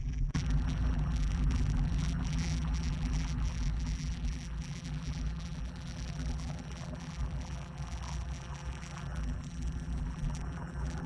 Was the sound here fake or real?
fake